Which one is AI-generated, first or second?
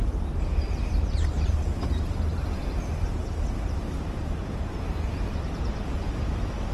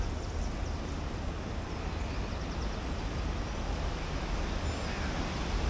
first